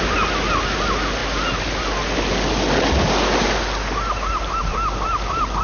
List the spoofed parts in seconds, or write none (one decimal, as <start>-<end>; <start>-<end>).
none